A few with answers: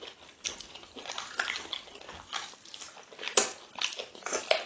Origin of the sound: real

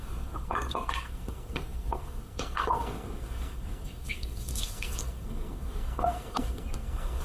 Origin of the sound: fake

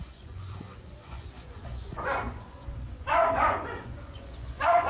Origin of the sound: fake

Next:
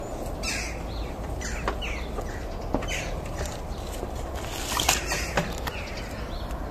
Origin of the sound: real